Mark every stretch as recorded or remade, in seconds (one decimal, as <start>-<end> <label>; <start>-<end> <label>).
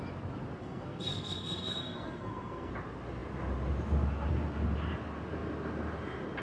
0.0-0.6 recorded; 0.6-2.7 remade; 2.7-6.4 recorded